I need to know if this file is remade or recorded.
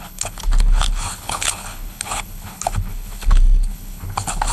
remade